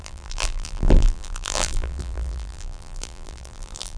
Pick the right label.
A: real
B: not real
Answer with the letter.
B